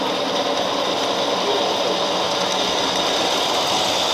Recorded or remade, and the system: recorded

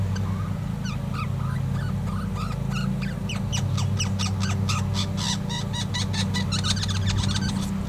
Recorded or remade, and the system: recorded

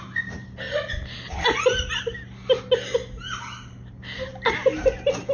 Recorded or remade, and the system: recorded